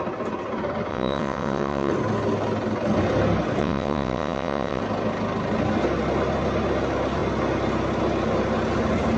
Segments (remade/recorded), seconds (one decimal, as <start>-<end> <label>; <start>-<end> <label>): 0.0-0.9 recorded; 0.9-1.9 remade; 1.9-3.6 recorded; 3.6-4.8 remade; 4.8-9.2 recorded